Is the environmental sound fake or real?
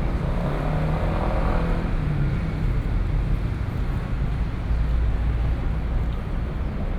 real